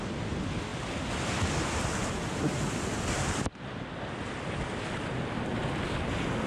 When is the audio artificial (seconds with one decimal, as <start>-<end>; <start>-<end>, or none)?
none